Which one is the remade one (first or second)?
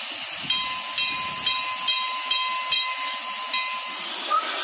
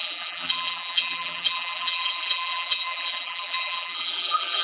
second